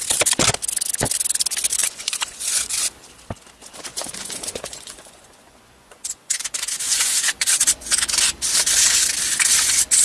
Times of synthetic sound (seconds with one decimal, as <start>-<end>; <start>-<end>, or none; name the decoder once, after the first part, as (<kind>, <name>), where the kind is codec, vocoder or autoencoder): 1.8-2.9 (vocoder, Vocos); 3.9-8.2